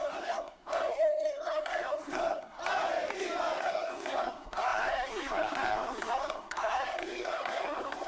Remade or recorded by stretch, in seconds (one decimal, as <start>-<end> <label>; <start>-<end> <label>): 0.0-2.6 remade; 2.6-3.6 recorded; 3.6-8.1 remade